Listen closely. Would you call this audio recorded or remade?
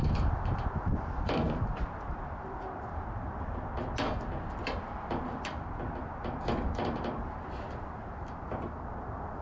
recorded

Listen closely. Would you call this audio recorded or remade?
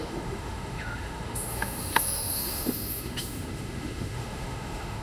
remade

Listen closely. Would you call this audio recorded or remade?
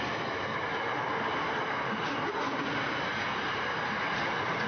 recorded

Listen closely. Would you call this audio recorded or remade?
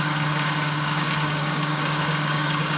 remade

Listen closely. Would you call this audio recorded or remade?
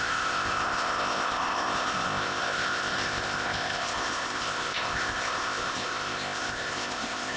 remade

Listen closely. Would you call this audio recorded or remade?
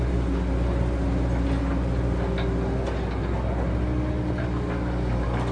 recorded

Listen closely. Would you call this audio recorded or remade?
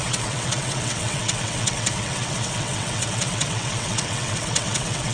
remade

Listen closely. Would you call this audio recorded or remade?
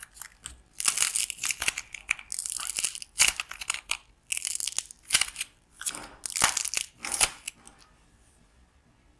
recorded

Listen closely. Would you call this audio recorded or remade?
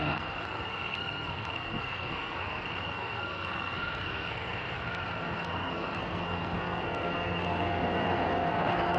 remade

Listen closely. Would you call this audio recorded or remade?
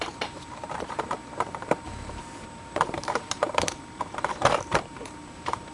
remade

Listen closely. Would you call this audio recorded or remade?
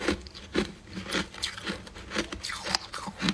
recorded